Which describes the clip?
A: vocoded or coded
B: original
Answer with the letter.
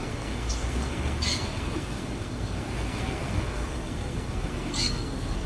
A